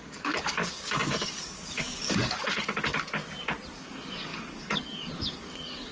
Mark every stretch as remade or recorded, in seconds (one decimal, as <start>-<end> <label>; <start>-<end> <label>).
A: 0.0-3.2 remade; 3.2-3.7 recorded; 3.7-5.9 remade